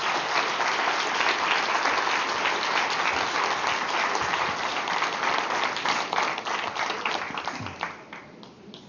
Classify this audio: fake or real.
real